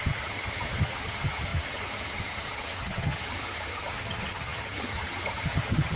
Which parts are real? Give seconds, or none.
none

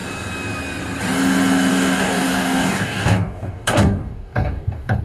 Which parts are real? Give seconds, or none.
0.0-1.7

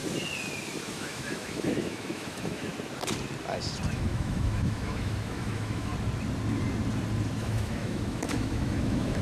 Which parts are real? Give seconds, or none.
0.0-0.9; 2.7-3.9; 5.9-7.4